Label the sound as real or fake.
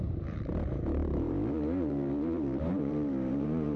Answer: fake